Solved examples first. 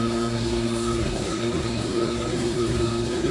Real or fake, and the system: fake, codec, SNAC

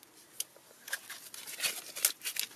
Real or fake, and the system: real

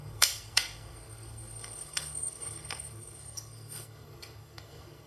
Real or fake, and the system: fake, codec, SNAC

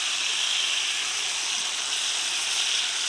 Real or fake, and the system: real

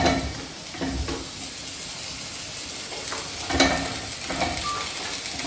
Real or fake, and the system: real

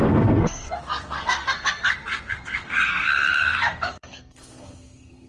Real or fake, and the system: fake, codec, SNAC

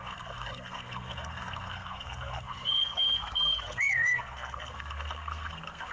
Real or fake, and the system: fake, codec, SNAC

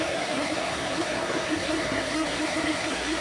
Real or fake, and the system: fake, codec, SNAC